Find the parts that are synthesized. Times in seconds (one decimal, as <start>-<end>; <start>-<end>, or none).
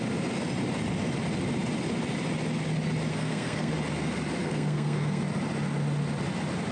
3.1-3.7; 4.4-5.2